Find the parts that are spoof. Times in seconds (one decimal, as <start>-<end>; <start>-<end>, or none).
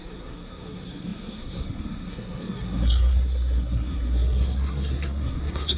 0.0-5.8